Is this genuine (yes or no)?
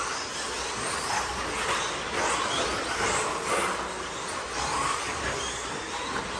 yes